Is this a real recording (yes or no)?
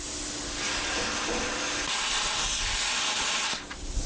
yes